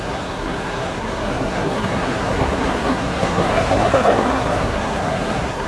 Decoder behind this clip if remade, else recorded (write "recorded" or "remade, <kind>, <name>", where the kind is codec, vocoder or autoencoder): remade, codec, SNAC